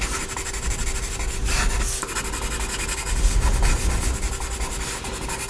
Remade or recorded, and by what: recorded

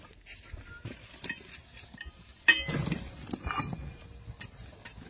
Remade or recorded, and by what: recorded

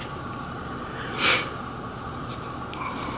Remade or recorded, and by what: recorded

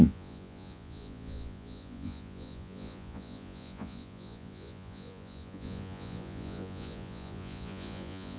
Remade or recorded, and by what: remade, vocoder, Vocos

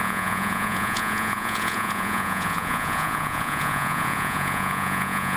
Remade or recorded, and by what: remade, vocoder, Vocos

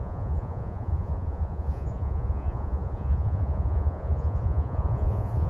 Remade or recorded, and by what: remade, vocoder, Vocos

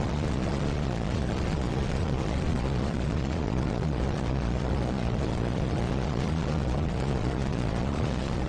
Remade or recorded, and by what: remade, vocoder, Vocos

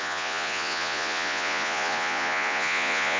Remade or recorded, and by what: remade, vocoder, Vocos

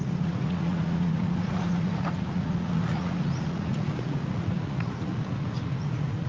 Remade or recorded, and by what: remade, vocoder, Vocos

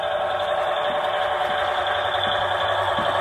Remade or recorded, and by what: recorded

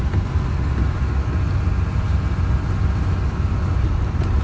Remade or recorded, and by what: recorded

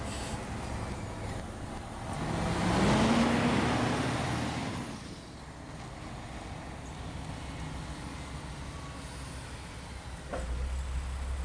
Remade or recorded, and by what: recorded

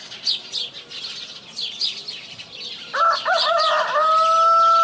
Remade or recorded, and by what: recorded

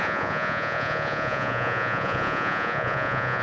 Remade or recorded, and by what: remade, vocoder, Vocos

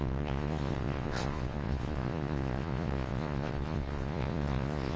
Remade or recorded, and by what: remade, vocoder, Vocos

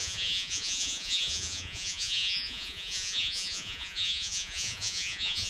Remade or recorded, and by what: remade, vocoder, Vocos